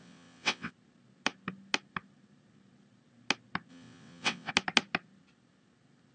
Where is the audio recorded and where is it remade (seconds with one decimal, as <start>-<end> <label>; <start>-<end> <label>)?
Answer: 0.0-0.7 remade; 0.7-3.7 recorded; 3.7-4.5 remade; 4.5-6.1 recorded